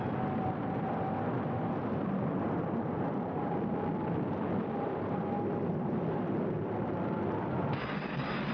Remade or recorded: recorded